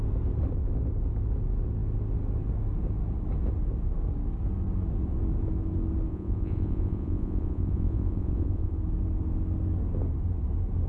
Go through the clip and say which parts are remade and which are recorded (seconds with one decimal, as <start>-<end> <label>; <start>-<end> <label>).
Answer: 0.0-6.1 recorded; 6.1-8.8 remade; 8.8-10.9 recorded